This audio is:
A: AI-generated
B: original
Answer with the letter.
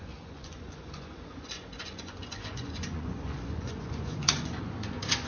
A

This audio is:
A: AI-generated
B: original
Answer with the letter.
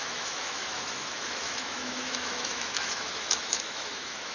A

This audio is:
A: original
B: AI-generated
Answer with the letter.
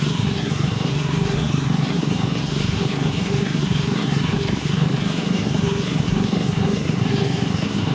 B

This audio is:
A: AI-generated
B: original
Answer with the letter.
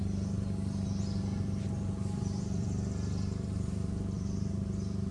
A